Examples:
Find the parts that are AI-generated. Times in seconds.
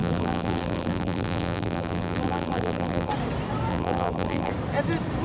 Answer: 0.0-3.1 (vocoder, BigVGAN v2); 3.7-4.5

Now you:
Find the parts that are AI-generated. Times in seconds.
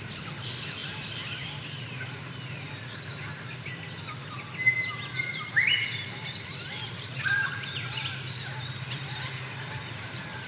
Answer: 0.0-0.8 (vocoder, BigVGAN v2); 5.1-10.5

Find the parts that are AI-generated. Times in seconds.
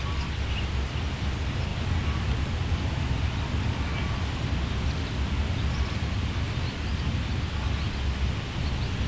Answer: 3.9-7.1 (vocoder, BigVGAN v2)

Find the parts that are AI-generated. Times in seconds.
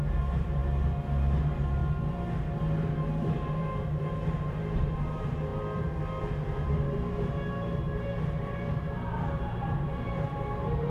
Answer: 0.0-0.6 (vocoder, BigVGAN v2); 1.4-1.8; 3.2-10.9